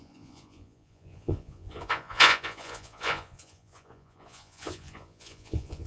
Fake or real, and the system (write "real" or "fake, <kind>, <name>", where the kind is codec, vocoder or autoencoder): fake, vocoder, Vocos